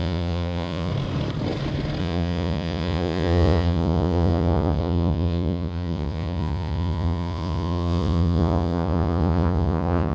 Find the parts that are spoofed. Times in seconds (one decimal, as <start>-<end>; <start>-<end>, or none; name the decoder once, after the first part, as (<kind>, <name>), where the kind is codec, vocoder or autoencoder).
0.0-0.9 (vocoder, Vocos); 2.0-10.1

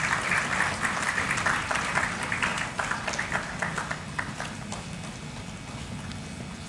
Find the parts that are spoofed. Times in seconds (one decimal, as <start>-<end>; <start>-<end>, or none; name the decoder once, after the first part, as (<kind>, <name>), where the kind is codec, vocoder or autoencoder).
none

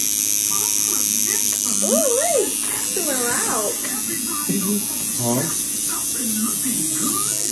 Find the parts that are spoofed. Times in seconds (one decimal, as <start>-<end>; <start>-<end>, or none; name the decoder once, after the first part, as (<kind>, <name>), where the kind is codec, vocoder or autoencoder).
none

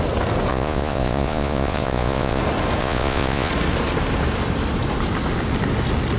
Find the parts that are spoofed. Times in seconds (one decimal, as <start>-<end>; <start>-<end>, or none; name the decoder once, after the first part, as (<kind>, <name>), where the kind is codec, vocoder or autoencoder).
0.5-2.4 (vocoder, Vocos); 2.8-3.5

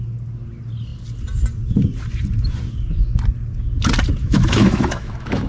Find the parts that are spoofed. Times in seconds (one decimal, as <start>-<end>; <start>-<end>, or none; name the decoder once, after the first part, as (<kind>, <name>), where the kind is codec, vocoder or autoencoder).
4.2-5.5 (autoencoder, DAC-VAE)

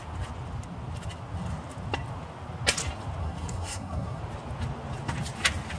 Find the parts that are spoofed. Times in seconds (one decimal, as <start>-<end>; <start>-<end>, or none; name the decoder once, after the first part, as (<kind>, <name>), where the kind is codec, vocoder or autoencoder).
3.2-4.2 (codec, SNAC)

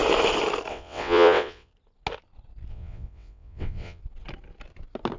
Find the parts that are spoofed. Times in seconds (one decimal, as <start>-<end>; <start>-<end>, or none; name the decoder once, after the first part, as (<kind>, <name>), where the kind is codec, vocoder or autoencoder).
0.7-1.7 (vocoder, WaveNeXt); 2.7-4.0